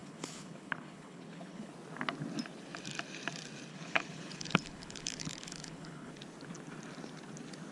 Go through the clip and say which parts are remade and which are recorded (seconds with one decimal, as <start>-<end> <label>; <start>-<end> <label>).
0.0-1.7 remade; 1.7-3.7 recorded; 3.7-6.1 remade; 6.1-7.7 recorded